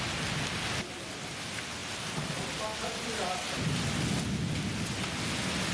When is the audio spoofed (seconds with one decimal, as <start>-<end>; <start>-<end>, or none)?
none